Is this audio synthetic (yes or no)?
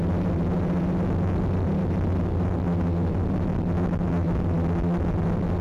no